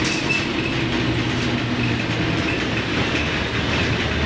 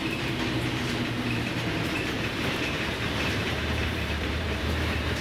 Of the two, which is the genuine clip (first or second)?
first